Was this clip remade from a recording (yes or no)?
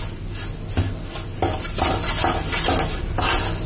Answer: no